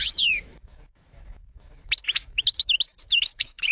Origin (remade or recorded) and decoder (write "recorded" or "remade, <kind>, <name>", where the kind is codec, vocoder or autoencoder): remade, autoencoder, DAC-VAE